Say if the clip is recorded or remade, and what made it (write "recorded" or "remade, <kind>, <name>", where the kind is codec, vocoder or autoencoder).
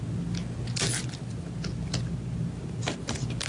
recorded